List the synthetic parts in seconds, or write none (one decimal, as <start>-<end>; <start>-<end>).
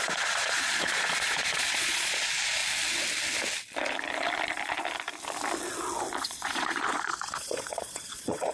0.0-2.6; 6.2-8.5